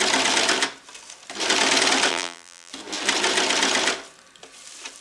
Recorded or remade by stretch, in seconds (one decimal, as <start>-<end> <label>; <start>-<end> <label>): 0.0-2.1 recorded; 2.1-2.7 remade; 2.7-5.0 recorded